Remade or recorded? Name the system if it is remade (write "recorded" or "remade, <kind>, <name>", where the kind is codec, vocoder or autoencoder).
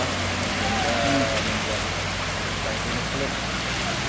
recorded